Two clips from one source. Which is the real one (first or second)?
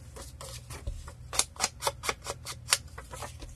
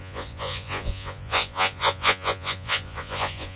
first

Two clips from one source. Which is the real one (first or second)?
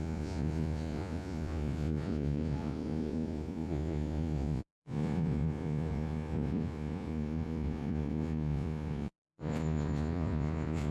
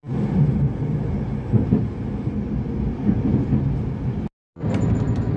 second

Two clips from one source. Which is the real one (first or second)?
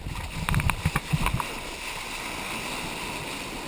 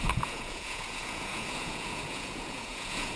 first